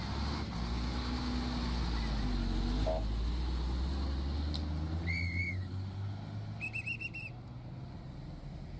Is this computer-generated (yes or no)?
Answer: no